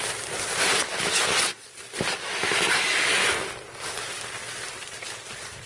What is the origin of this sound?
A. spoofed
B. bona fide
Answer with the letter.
B